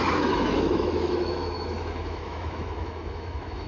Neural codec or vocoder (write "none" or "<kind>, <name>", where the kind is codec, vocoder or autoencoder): autoencoder, DAC-VAE